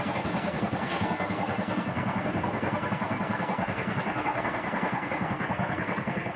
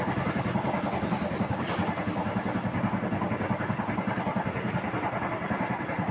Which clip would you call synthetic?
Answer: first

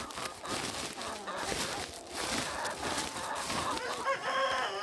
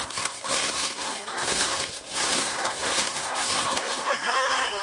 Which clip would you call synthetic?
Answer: second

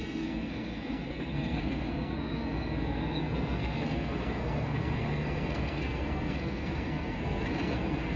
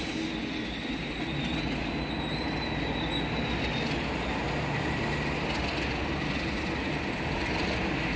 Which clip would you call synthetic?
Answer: first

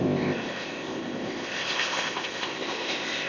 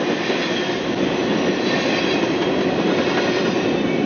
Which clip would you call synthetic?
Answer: first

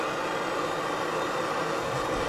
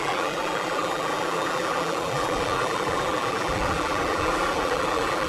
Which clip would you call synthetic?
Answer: second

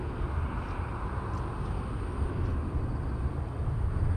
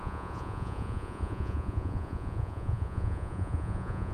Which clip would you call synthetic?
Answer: second